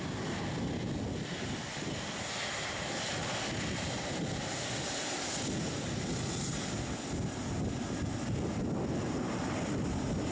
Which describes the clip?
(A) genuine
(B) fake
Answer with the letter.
A